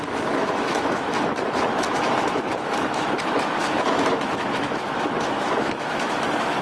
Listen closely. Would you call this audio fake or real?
fake